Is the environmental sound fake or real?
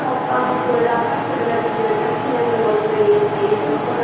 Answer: real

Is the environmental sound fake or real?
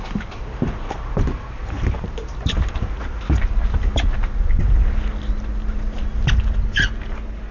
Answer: real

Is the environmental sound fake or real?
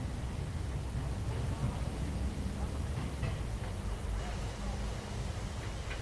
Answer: real